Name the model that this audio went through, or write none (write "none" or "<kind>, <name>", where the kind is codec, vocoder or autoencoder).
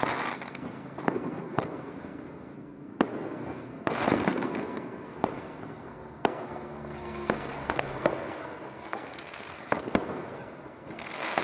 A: codec, SNAC